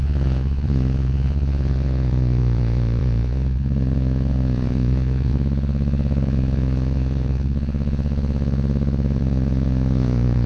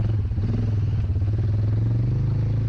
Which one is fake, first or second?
first